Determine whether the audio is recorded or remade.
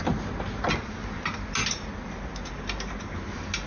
recorded